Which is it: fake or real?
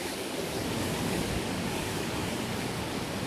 fake